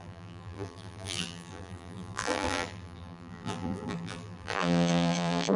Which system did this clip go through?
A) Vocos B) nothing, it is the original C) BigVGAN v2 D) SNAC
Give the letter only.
C